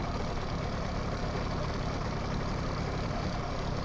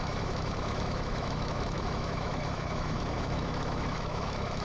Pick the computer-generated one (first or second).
second